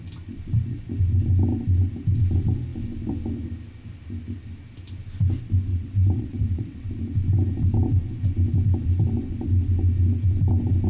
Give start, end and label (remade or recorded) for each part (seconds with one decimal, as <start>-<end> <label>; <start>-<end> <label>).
0.0-5.7 recorded; 5.7-6.9 remade; 6.9-10.9 recorded